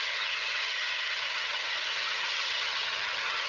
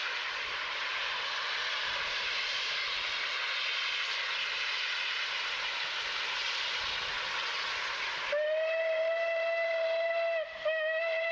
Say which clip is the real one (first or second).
second